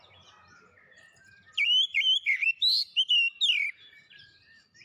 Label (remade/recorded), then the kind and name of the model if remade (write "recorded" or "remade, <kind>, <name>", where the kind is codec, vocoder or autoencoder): recorded